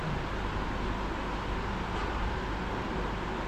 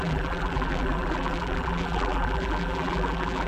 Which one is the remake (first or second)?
second